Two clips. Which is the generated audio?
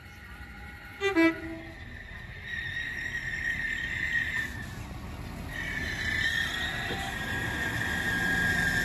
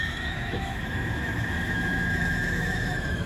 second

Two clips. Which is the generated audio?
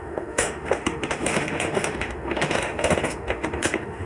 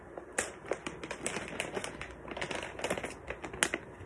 first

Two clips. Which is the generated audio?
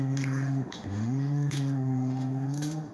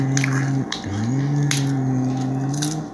first